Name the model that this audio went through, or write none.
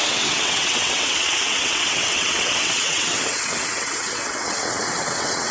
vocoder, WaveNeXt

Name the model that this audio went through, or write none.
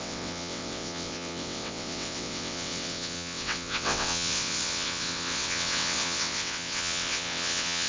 vocoder, WaveNeXt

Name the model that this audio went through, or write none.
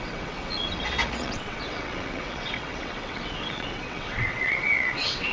vocoder, WaveNeXt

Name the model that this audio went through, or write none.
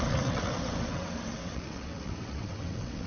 vocoder, WaveNeXt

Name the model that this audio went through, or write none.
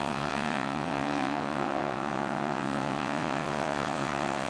vocoder, WaveNeXt